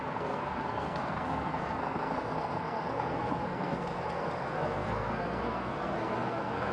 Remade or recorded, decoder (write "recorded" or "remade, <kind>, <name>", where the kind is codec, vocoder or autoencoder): remade, codec, SNAC